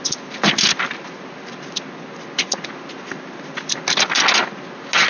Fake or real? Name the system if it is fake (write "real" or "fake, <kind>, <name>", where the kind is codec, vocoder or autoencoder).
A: real